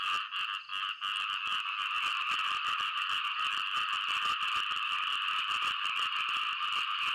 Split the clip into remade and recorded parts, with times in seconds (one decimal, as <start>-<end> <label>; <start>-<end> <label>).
0.0-2.1 recorded; 2.1-6.4 remade; 6.4-7.1 recorded